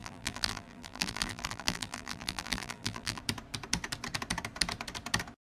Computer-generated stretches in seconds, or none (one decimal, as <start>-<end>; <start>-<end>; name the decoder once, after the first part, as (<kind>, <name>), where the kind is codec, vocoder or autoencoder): 0.0-3.2 (vocoder, BigVGAN v2)